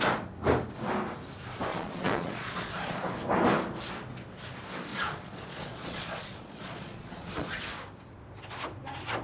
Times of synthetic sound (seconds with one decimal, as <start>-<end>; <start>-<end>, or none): 1.7-3.0; 4.9-7.6